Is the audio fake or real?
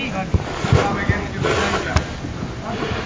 real